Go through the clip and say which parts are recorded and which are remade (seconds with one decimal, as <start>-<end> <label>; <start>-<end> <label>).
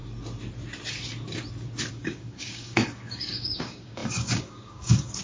0.0-1.9 recorded; 1.9-5.2 remade